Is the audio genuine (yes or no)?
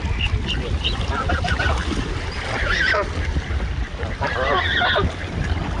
yes